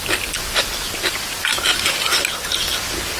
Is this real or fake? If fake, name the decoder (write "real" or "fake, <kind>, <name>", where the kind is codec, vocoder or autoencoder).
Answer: real